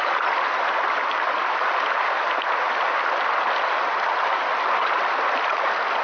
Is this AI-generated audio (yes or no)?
no